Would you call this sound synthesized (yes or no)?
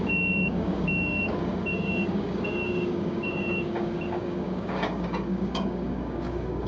yes